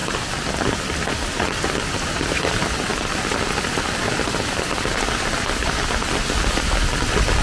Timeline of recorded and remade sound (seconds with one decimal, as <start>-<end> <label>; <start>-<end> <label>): 0.0-1.9 recorded; 1.9-7.4 remade